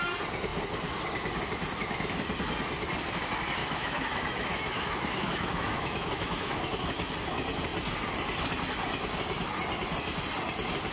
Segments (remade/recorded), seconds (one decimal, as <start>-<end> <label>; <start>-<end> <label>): 0.0-3.6 recorded; 3.6-7.1 remade; 7.1-10.9 recorded